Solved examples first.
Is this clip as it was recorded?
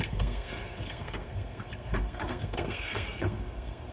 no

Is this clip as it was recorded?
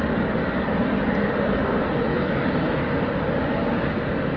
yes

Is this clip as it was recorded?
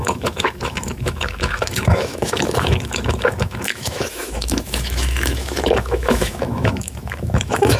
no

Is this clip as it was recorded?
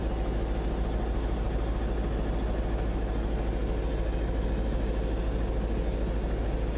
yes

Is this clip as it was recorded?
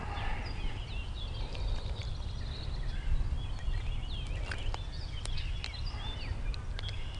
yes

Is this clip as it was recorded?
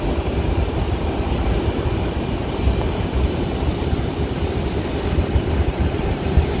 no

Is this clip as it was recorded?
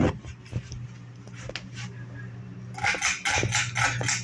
yes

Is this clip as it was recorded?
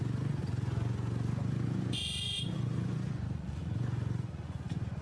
no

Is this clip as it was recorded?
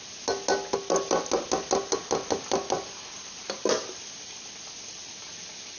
yes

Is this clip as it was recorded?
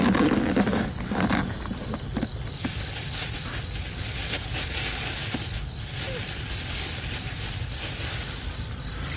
yes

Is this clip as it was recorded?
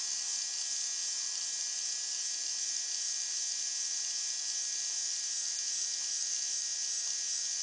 yes